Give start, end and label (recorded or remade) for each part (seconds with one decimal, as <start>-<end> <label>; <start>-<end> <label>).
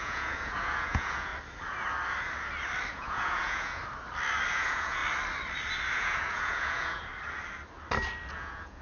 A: 0.0-1.3 remade; 1.3-2.9 recorded; 2.9-3.8 remade; 3.8-4.5 recorded; 4.5-5.0 remade; 5.0-5.9 recorded; 5.9-7.1 remade; 7.1-8.3 recorded; 8.3-8.8 remade